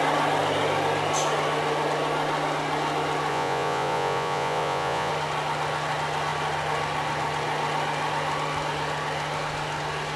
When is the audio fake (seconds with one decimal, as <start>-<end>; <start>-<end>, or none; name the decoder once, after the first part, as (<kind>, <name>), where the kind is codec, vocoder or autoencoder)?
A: 3.3-5.1 (vocoder, Vocos)